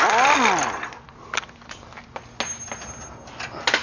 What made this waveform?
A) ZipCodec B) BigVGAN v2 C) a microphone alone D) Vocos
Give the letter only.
C